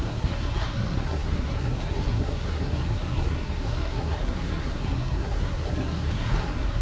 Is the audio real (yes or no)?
no